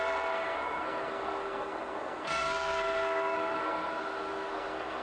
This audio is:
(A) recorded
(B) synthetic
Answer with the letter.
B